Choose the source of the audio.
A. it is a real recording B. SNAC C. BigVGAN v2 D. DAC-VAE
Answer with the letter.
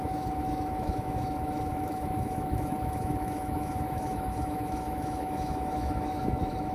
D